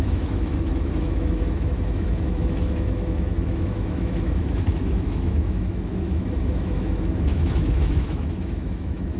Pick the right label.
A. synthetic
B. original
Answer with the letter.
A